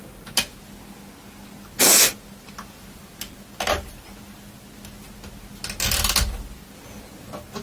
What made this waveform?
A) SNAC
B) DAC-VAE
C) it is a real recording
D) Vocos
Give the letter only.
C